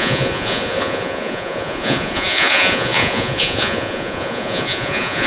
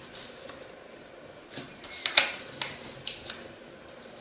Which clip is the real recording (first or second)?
second